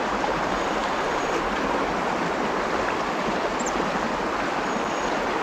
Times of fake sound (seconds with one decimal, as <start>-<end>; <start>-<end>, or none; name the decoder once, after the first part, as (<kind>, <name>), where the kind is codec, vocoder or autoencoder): none